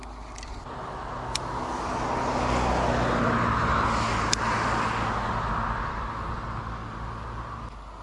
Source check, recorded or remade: recorded